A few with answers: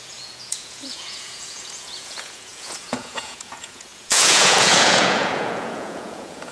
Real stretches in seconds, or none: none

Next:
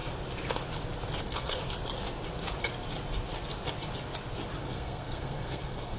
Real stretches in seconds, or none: 0.0-1.2; 1.6-4.6

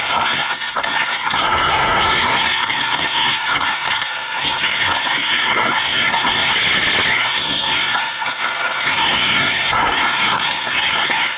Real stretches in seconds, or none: 6.5-7.1

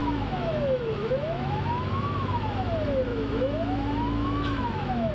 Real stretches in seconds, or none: 2.7-3.1

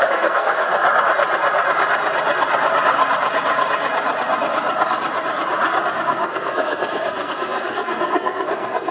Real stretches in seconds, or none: 0.7-5.9